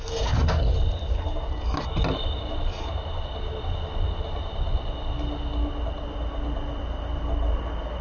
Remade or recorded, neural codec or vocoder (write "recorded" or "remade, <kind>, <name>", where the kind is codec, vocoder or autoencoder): recorded